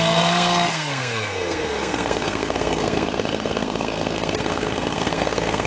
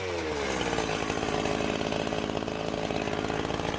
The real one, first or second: second